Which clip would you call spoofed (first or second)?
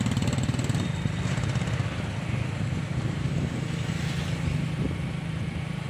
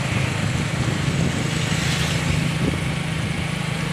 first